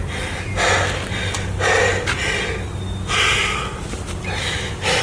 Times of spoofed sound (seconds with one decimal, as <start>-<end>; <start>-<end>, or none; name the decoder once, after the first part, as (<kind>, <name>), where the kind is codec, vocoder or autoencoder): 4.4-5.0 (autoencoder, DAC-VAE)